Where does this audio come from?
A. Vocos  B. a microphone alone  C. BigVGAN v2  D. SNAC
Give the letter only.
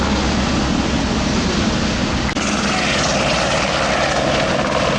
B